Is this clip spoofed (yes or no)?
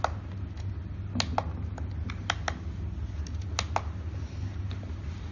no